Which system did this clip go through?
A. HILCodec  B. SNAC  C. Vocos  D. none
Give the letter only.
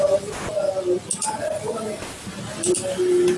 D